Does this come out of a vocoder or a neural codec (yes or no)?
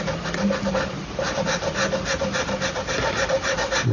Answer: no